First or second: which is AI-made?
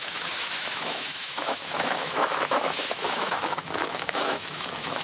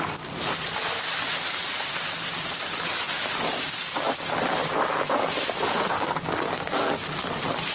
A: first